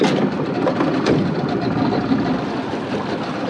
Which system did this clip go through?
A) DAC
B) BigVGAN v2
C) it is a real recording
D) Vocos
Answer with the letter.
B